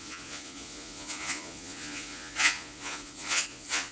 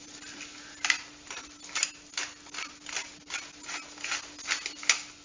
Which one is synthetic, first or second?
first